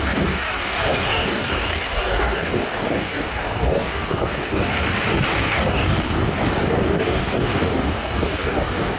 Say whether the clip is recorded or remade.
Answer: remade